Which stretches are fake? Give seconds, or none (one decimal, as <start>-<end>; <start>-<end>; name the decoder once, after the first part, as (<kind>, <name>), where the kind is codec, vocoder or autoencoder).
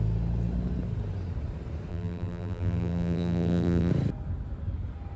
1.9-3.9 (vocoder, BigVGAN v2)